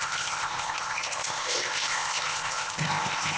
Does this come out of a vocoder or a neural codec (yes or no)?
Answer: yes